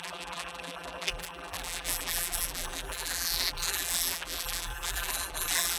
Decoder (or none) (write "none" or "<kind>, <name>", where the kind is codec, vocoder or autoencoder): vocoder, BigVGAN v2